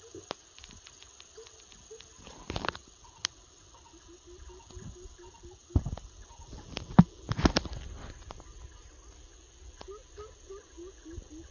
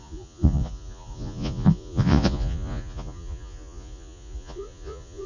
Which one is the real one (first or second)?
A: first